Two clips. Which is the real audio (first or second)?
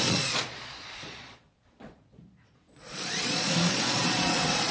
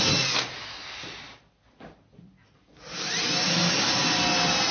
second